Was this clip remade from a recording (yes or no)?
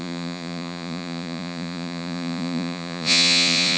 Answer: yes